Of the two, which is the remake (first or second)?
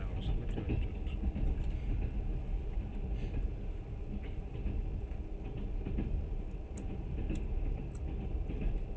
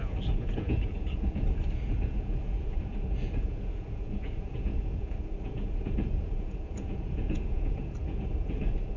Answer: second